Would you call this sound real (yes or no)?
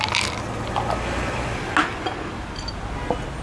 yes